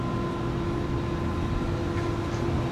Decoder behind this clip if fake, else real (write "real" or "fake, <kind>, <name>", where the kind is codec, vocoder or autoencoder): real